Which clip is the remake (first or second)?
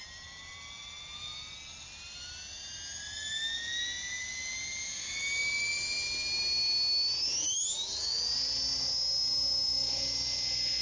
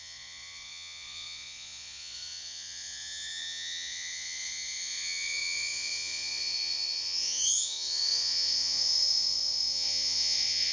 second